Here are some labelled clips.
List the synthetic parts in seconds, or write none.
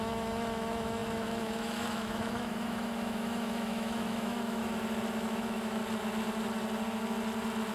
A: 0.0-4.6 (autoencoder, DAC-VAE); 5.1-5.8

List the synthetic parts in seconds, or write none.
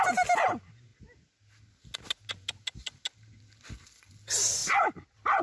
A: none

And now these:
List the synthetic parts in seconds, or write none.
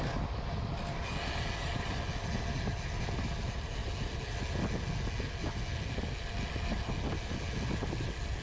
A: none